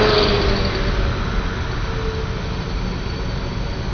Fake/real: real